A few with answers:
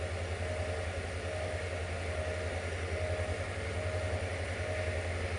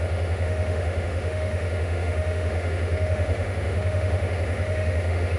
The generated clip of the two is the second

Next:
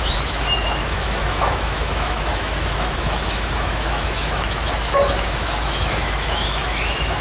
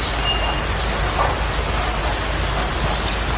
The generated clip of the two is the first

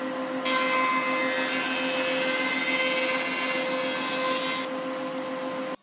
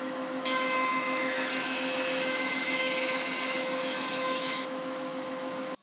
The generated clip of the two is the second